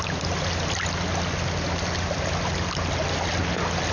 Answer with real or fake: real